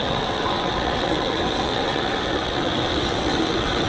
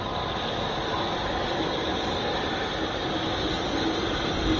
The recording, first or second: second